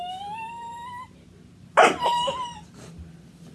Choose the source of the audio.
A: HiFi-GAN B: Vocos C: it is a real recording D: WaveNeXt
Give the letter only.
C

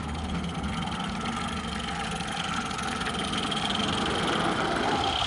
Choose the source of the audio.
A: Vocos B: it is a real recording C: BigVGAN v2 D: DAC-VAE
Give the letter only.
B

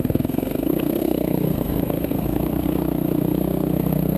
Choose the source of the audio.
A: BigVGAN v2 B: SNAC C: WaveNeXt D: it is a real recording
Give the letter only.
B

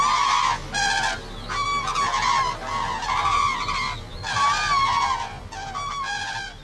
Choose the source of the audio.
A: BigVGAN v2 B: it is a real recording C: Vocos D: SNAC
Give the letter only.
B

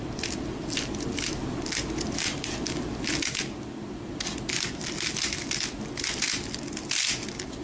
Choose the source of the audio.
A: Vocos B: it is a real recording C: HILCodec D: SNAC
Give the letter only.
B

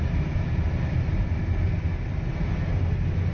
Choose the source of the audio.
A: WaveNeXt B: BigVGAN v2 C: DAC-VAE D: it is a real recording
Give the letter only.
D